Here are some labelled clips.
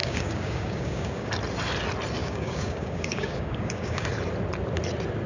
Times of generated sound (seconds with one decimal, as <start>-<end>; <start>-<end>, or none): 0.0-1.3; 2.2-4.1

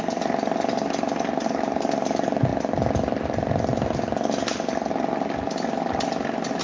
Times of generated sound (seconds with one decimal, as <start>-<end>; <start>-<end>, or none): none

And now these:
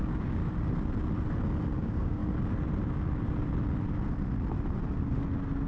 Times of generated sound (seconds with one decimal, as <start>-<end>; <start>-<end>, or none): 0.0-0.4; 1.8-2.2